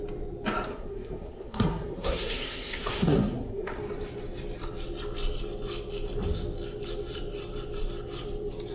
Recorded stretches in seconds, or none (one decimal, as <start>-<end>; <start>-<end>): 0.0-0.7; 3.8-8.7